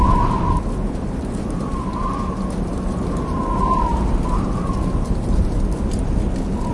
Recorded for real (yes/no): yes